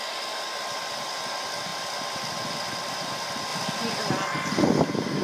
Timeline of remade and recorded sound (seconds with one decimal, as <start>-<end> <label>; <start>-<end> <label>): 0.0-5.2 recorded